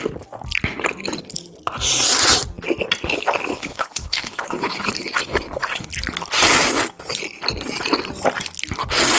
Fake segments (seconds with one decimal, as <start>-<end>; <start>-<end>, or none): 3.5-5.9